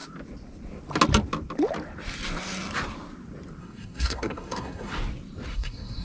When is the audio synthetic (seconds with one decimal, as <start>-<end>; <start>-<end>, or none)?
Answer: 3.6-4.9; 5.5-6.0